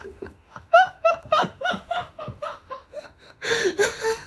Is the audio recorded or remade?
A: remade